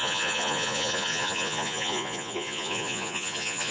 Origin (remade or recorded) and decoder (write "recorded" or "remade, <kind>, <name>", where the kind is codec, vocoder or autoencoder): remade, vocoder, Vocos